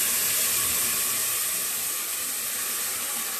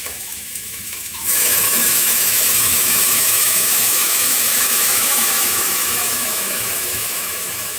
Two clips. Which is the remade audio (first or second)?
second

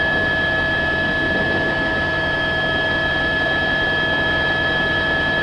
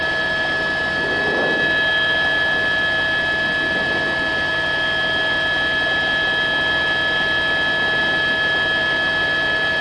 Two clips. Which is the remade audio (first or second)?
first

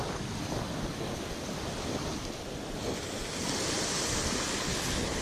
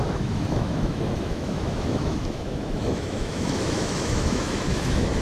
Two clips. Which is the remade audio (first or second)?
second